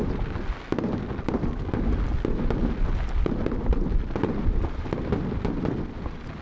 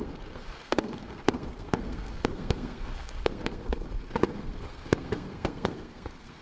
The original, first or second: first